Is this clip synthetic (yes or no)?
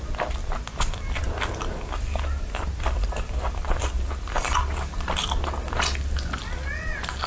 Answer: no